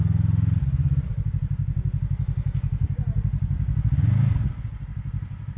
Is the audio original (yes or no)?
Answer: yes